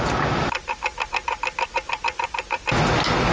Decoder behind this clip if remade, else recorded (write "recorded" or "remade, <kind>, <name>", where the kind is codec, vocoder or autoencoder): recorded